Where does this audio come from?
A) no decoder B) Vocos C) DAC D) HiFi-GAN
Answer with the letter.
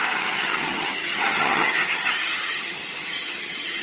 D